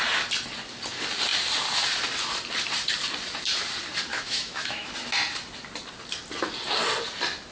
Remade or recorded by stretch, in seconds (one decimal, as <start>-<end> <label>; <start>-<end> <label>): 0.0-4.1 recorded; 4.1-4.9 remade; 4.9-7.5 recorded